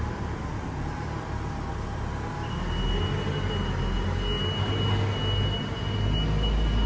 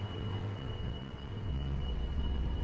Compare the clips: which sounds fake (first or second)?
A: second